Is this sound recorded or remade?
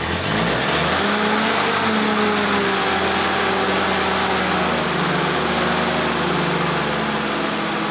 recorded